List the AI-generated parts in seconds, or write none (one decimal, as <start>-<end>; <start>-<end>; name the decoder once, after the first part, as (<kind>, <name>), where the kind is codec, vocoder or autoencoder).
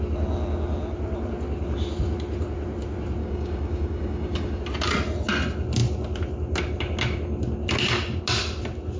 3.2-4.6 (codec, DAC)